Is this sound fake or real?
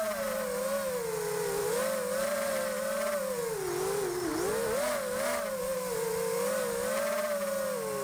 real